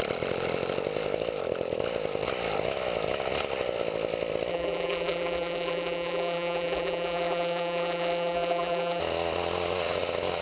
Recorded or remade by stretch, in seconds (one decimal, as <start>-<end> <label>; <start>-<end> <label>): 0.0-4.5 recorded; 4.5-9.0 remade; 9.0-10.4 recorded

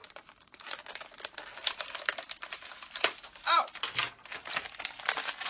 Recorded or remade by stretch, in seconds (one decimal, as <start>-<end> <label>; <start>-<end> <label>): 0.0-0.9 remade; 0.9-1.6 recorded; 1.6-4.6 remade; 4.6-5.5 recorded

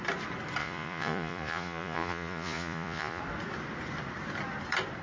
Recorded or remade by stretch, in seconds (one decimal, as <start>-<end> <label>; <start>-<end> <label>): 0.0-0.6 recorded; 0.6-3.2 remade; 3.2-5.0 recorded

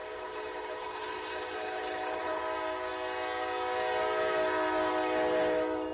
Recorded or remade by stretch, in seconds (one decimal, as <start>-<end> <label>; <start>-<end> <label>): 0.0-2.4 remade; 2.4-5.9 recorded